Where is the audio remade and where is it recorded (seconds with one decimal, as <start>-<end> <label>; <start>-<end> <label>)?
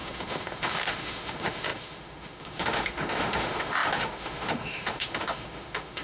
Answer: 0.0-6.0 remade